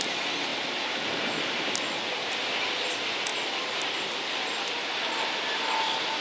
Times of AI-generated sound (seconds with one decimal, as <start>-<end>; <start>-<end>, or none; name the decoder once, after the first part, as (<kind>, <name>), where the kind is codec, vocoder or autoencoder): none